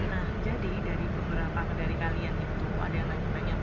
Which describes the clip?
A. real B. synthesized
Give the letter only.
A